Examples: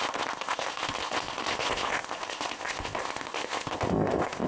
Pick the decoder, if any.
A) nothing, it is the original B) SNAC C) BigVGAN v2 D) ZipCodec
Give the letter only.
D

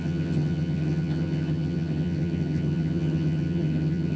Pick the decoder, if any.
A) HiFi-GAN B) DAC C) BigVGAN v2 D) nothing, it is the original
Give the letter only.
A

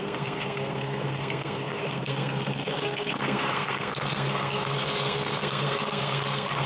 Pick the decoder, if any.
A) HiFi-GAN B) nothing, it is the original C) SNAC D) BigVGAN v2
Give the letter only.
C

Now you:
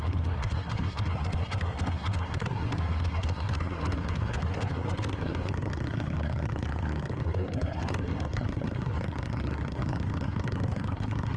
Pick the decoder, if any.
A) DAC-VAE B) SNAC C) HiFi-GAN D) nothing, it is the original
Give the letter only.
B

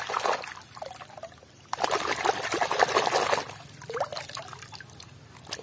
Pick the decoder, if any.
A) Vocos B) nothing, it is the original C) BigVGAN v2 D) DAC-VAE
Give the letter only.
B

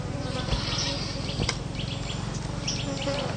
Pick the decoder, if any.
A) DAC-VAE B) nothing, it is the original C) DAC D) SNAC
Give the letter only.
B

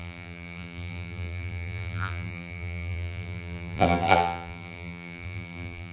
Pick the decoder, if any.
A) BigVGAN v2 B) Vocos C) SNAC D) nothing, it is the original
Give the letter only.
A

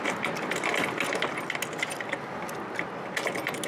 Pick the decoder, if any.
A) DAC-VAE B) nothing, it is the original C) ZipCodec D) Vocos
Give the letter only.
B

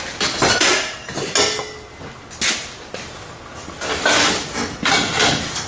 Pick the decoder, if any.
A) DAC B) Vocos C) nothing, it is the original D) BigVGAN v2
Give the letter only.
C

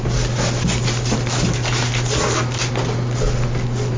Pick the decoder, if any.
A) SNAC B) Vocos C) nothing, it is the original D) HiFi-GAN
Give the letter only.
C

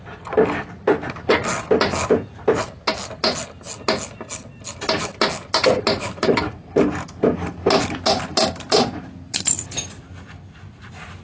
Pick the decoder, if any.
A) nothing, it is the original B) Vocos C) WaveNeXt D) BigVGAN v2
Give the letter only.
A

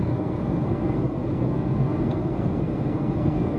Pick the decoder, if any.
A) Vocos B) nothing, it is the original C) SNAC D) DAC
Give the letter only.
C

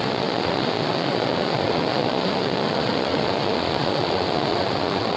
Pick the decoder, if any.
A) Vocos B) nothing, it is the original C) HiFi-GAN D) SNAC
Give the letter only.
A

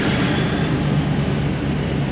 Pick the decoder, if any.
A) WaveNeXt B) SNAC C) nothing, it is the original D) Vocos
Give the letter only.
C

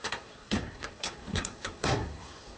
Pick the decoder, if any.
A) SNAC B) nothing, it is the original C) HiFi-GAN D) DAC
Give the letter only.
A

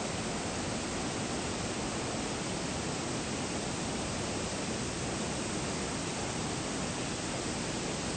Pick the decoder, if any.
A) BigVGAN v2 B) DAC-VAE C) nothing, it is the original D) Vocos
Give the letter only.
C